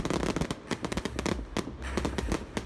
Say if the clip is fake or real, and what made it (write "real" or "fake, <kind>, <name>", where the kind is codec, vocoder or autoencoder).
real